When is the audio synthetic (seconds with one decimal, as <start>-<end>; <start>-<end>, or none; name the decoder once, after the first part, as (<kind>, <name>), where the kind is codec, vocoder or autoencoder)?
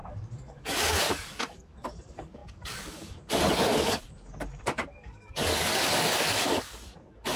0.0-7.4 (codec, DAC)